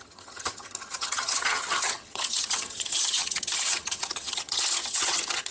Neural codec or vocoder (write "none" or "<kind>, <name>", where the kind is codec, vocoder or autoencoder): vocoder, HiFi-GAN